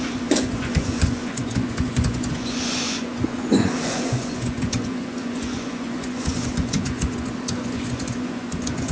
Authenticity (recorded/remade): remade